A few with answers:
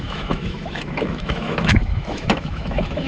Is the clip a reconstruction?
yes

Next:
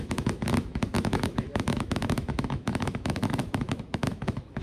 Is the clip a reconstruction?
yes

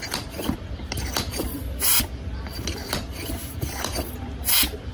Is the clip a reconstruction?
no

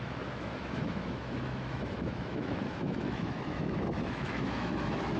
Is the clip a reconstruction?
yes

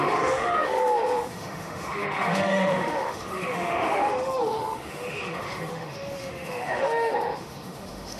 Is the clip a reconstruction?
yes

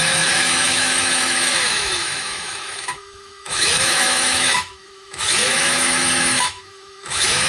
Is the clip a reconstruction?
yes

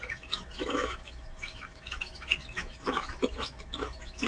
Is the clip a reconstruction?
yes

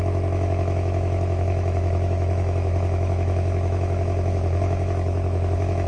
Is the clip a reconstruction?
yes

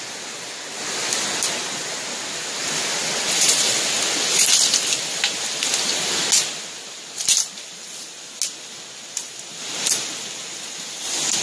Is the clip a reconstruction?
no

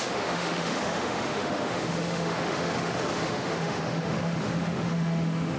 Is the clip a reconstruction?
yes